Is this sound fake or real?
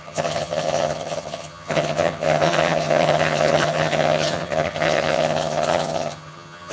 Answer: fake